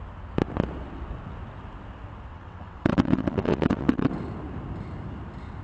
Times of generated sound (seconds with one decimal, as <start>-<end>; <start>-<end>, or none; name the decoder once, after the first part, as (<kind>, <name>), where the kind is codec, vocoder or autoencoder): 2.3-4.1 (vocoder, WaveNeXt)